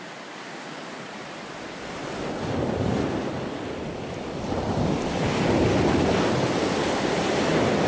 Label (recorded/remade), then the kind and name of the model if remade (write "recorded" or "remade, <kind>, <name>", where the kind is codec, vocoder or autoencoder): recorded